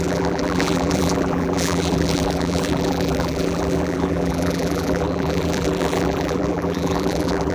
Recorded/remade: remade